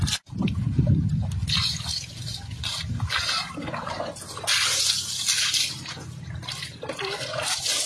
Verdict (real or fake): real